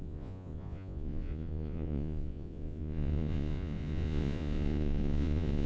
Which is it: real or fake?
fake